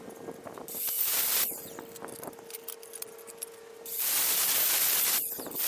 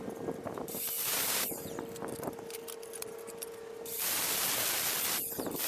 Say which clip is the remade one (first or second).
second